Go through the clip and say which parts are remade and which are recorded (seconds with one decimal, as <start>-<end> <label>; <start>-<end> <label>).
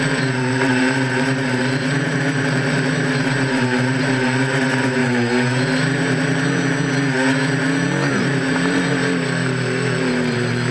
0.0-5.0 remade; 5.0-8.1 recorded; 8.1-10.7 remade